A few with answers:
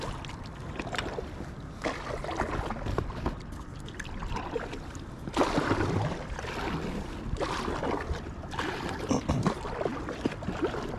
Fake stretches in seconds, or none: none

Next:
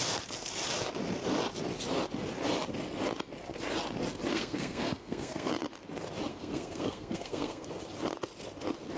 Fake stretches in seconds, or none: 4.3-5.5 (codec, SNAC); 6.3-7.7